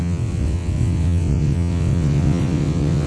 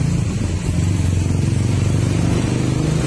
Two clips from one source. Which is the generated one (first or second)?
first